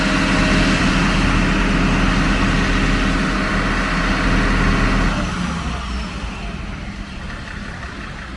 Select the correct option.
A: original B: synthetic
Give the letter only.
A